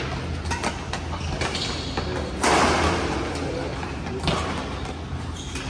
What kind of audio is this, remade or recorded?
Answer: recorded